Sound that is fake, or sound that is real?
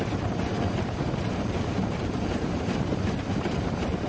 fake